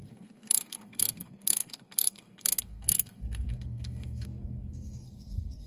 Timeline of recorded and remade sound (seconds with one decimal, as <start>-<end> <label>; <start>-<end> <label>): 0.0-5.7 remade